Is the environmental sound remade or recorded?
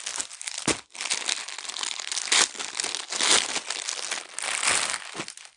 recorded